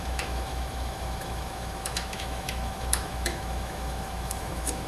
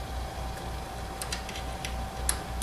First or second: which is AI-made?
first